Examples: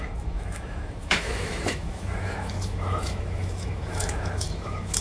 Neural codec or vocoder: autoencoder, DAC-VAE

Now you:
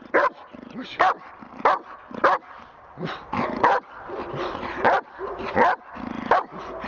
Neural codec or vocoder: none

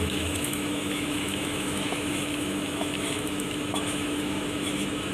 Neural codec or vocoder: autoencoder, DAC-VAE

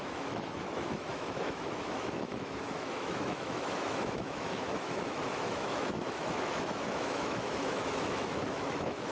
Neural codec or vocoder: autoencoder, DAC-VAE